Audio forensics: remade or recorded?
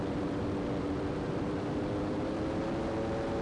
remade